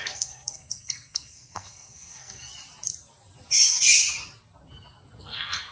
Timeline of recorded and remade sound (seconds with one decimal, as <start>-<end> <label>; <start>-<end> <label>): 0.0-2.5 remade; 2.5-5.2 recorded; 5.2-5.7 remade